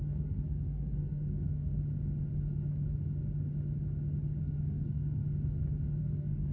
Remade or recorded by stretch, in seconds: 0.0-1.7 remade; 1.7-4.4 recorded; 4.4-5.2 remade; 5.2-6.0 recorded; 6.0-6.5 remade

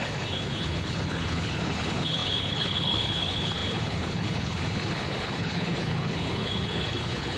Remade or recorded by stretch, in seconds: 0.0-7.4 remade

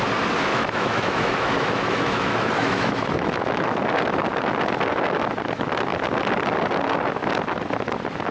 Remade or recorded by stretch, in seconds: 0.0-0.5 recorded; 0.5-3.8 remade; 3.8-8.3 recorded

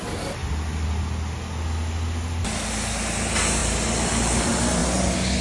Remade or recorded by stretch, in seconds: 0.0-5.4 recorded

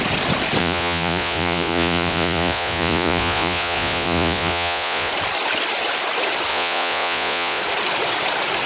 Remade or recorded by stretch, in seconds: 0.0-0.6 recorded; 0.6-5.1 remade; 5.1-6.5 recorded; 6.5-7.6 remade; 7.6-8.7 recorded